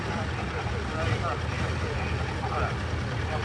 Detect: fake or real real